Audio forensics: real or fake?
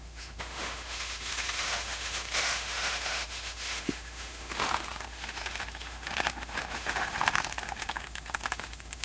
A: fake